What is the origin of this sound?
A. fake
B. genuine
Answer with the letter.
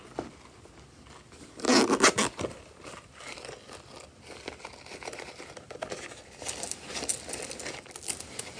B